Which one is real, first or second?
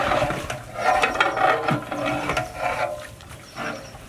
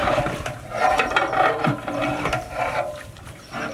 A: first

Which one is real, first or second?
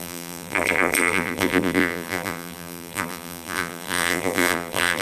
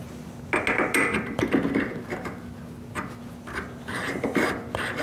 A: second